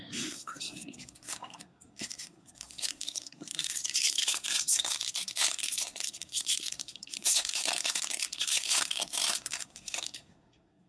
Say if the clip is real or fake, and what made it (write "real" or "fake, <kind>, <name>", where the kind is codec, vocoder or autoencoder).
fake, codec, SNAC